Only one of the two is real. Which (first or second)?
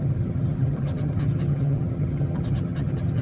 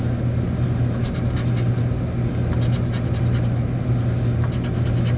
second